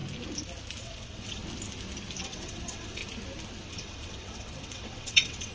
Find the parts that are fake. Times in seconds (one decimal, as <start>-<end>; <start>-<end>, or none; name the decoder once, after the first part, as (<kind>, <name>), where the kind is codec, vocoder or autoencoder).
0.8-1.4 (vocoder, WaveNeXt); 2.2-3.0; 3.7-5.5